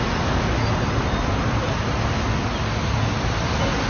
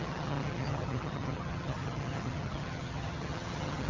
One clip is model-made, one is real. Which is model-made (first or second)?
second